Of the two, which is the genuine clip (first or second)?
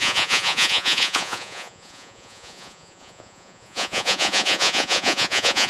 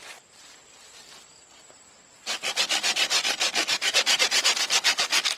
second